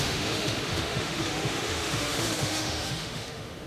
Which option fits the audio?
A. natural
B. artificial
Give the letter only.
B